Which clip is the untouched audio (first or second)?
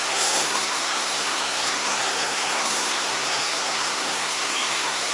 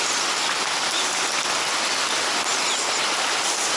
second